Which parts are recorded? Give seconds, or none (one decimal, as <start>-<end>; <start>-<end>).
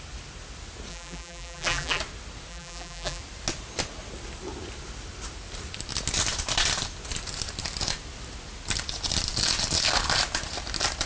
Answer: 0.0-0.9; 2.0-2.5; 3.2-11.1